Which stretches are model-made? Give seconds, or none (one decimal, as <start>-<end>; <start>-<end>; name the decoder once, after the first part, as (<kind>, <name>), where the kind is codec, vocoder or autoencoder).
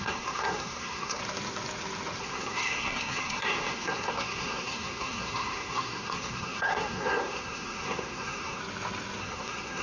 0.0-1.2 (codec, SNAC); 2.2-8.6; 9.2-9.8